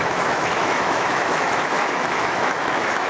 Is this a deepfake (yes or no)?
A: yes